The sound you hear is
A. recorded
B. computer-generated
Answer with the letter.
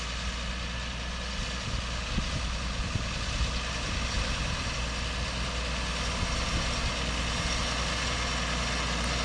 A